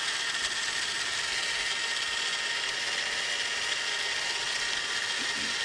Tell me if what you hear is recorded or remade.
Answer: recorded